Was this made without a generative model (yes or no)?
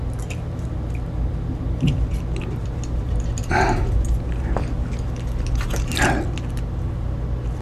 yes